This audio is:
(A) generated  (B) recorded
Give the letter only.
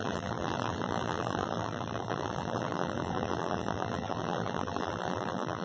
A